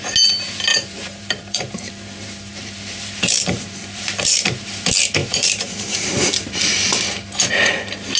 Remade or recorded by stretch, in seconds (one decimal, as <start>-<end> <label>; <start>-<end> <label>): 0.0-0.7 recorded; 0.7-1.9 remade; 1.9-2.5 recorded; 2.5-4.7 remade; 4.7-5.2 recorded; 5.2-6.3 remade; 6.3-8.2 recorded

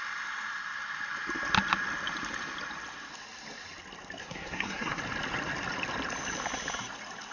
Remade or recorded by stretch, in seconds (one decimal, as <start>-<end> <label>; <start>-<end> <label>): 0.0-4.2 recorded; 4.2-5.0 remade; 5.0-7.3 recorded

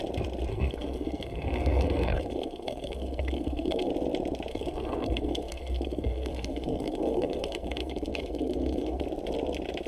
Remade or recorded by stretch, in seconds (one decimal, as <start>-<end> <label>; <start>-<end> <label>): 0.0-0.5 recorded; 0.5-3.9 remade; 3.9-4.5 recorded; 4.5-9.0 remade; 9.0-9.9 recorded

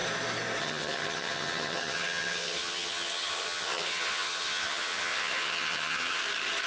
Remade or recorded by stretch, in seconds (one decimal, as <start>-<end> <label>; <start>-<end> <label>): 0.0-0.6 recorded; 0.6-6.2 remade; 6.2-6.7 recorded

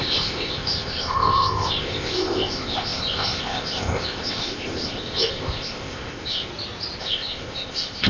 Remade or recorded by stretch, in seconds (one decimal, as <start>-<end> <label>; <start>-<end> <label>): 0.0-6.5 remade; 6.5-7.0 recorded; 7.0-8.1 remade

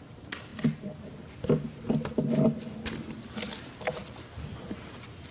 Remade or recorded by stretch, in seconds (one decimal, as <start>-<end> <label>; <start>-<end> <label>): 0.0-5.3 recorded

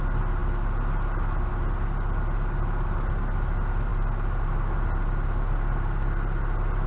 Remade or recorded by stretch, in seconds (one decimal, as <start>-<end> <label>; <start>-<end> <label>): 0.0-6.9 recorded

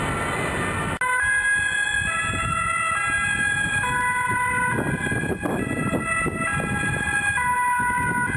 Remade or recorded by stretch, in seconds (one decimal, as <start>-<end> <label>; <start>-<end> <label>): 0.0-8.4 recorded